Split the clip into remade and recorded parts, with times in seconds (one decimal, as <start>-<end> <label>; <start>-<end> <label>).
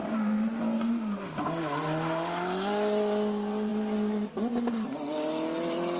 0.0-6.0 recorded